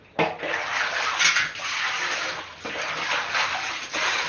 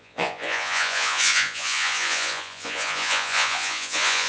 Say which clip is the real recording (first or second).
first